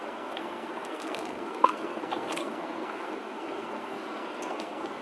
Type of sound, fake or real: fake